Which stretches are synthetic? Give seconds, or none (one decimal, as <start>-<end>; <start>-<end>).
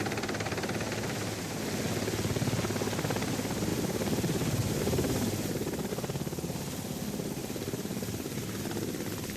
3.7-5.9; 7.4-8.6